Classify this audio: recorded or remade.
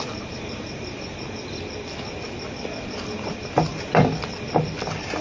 recorded